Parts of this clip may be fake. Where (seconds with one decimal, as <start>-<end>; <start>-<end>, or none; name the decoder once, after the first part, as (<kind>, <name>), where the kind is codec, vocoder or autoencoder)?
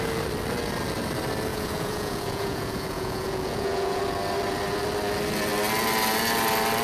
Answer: 1.5-4.0 (vocoder, Vocos)